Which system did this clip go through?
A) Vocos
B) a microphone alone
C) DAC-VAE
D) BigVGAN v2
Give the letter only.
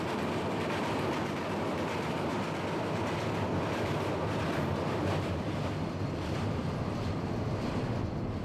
B